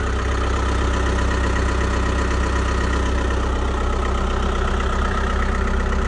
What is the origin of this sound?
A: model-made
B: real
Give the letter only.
B